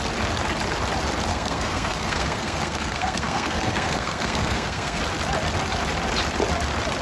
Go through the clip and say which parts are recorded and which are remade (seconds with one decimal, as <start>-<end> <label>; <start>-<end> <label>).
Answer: 0.0-1.3 recorded; 1.3-5.0 remade; 5.0-7.0 recorded